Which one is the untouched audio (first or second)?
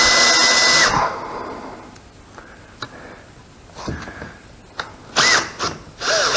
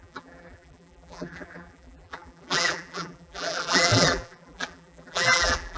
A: first